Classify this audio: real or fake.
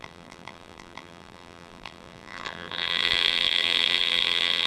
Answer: fake